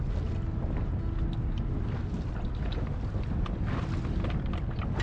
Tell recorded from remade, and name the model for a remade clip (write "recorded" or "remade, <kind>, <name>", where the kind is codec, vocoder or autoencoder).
recorded